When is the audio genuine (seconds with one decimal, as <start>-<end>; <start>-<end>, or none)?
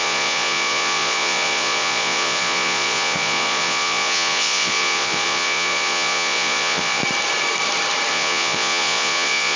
7.0-8.1